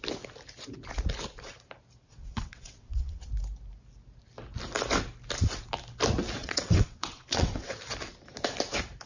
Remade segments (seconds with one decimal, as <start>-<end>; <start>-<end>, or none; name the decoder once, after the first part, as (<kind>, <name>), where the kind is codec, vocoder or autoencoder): 2.1-3.3 (vocoder, WaveNeXt); 6.4-7.8